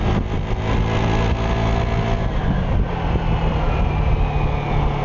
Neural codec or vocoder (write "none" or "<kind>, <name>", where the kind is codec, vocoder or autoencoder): none